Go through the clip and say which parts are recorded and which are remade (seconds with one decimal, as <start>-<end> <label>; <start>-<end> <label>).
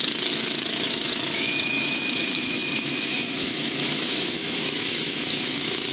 0.0-5.9 remade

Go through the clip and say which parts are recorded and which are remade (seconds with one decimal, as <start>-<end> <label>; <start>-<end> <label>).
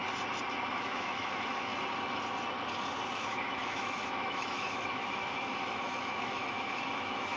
0.0-0.7 recorded; 0.7-1.7 remade; 1.7-3.2 recorded; 3.2-7.4 remade